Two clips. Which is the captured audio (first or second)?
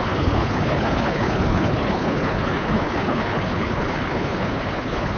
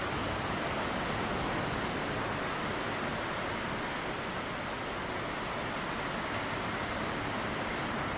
second